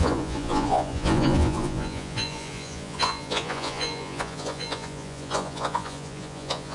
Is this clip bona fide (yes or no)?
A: no